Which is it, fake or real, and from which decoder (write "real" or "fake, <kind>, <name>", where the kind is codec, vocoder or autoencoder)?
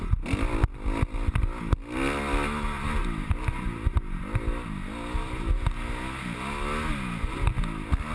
real